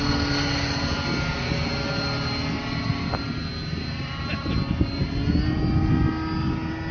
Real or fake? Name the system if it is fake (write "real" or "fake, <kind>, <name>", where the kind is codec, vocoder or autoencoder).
real